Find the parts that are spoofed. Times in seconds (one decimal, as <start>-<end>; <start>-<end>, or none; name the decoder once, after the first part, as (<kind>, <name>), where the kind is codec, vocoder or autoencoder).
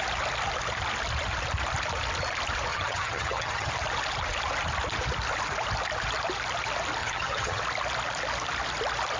2.7-3.7 (vocoder, HiFi-GAN); 7.0-7.6